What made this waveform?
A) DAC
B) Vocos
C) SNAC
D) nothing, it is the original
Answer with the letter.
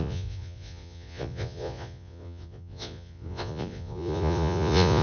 B